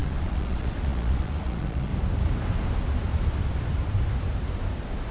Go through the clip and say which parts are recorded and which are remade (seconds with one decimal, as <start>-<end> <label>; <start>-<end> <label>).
0.0-1.9 remade; 1.9-5.1 recorded